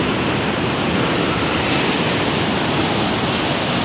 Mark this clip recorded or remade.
recorded